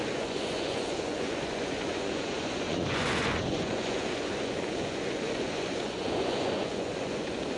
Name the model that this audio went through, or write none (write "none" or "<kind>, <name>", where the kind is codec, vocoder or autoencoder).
vocoder, Vocos